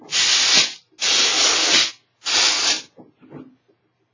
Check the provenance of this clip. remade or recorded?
recorded